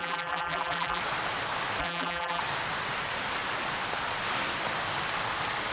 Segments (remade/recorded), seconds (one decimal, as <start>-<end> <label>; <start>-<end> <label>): 0.0-1.0 remade; 1.0-1.8 recorded; 1.8-2.4 remade; 2.4-5.7 recorded